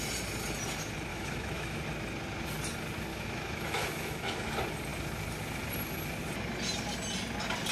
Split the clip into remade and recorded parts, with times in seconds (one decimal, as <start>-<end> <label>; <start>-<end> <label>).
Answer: 0.0-1.1 recorded; 1.1-1.8 remade; 1.8-3.1 recorded; 3.1-4.5 remade; 4.5-7.7 recorded